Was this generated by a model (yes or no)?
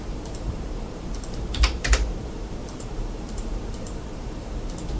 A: yes